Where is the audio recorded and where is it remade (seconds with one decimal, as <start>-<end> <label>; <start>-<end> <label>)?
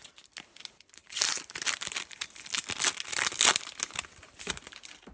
0.0-5.1 recorded